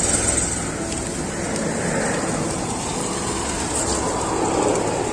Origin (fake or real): real